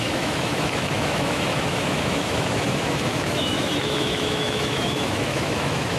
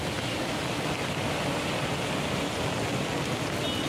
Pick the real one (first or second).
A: second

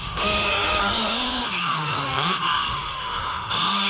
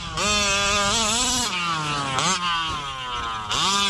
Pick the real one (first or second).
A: second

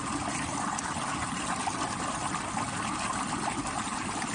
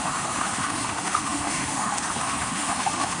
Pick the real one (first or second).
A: first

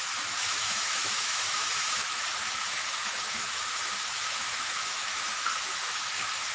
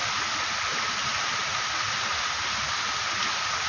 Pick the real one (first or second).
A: second